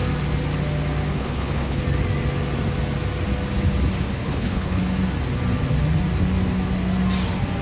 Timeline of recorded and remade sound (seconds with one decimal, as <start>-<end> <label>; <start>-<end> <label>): 0.0-1.1 recorded; 1.1-1.8 remade; 1.8-4.1 recorded; 4.1-4.8 remade; 4.8-7.6 recorded